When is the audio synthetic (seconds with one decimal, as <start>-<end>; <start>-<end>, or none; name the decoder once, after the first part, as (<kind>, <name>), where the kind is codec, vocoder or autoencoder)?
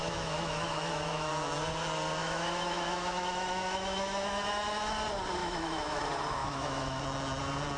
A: 0.0-1.3 (autoencoder, DAC-VAE); 2.2-4.9; 5.4-6.0; 6.4-7.0